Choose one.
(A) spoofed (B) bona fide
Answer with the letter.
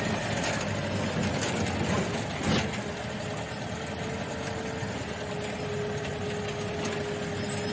B